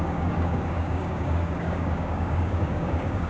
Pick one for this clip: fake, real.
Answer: fake